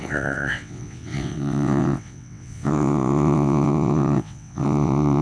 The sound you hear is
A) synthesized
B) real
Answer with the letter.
A